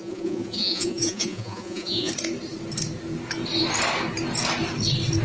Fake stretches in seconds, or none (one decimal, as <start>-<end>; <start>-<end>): 0.0-2.1